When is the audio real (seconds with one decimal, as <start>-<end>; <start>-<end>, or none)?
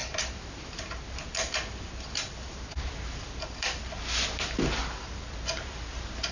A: 0.0-6.3